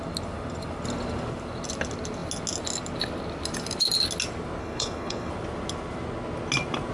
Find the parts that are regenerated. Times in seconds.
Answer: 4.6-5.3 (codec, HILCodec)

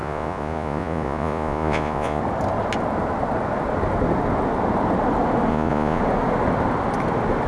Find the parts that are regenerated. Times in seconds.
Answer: 0.0-2.2 (vocoder, Vocos); 5.5-6.0

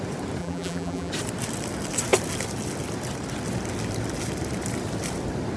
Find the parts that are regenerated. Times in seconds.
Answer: 0.4-1.1 (vocoder, BigVGAN v2)

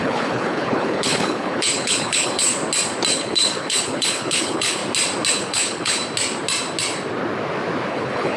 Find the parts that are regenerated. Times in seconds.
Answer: 0.0-2.6 (codec, HILCodec); 3.1-4.8; 5.3-6.0; 7.9-8.4

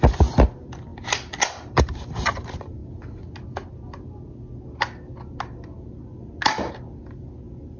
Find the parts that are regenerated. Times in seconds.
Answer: none